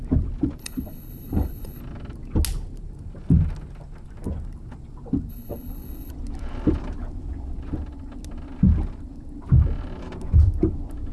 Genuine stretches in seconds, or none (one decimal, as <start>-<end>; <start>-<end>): 0.0-0.6; 1.8-5.3; 6.1-11.1